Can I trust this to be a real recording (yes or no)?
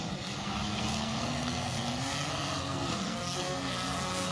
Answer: no